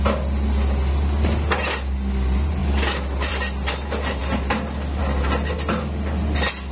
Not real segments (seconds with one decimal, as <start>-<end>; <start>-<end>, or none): none